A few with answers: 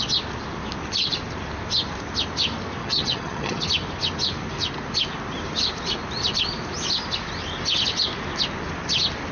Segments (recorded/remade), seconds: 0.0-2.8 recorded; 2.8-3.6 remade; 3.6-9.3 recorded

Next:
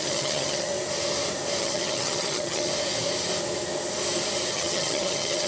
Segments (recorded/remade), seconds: 0.0-0.7 remade; 0.7-1.6 recorded; 1.6-2.7 remade; 2.7-4.5 recorded; 4.5-5.5 remade

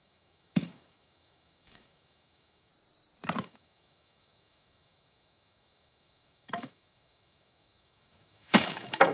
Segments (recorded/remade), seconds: 0.0-2.7 remade; 2.7-3.4 recorded; 3.4-9.1 remade

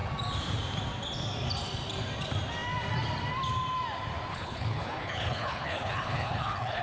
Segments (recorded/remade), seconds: 0.0-4.3 recorded; 4.3-6.8 remade

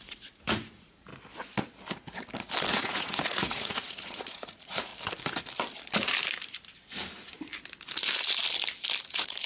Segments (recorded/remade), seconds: 0.0-1.1 remade; 1.1-2.7 recorded; 2.7-4.9 remade; 4.9-9.0 recorded; 9.0-9.5 remade

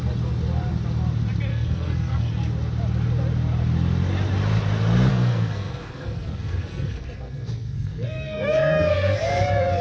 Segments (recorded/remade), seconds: 0.0-1.5 recorded; 1.5-2.3 remade; 2.3-5.1 recorded; 5.1-9.8 remade

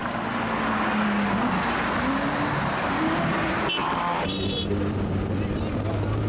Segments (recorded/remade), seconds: 0.0-6.3 recorded